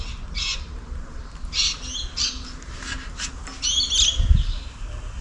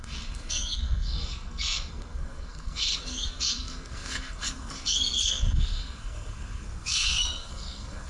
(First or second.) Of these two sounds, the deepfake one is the second